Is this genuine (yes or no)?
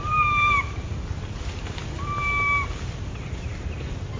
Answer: yes